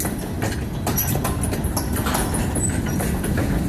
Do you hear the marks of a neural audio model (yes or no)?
no